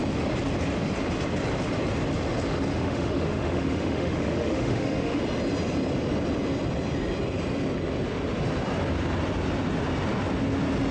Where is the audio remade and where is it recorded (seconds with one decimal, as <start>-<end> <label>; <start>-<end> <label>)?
0.0-2.7 recorded; 2.7-5.2 remade; 5.2-10.9 recorded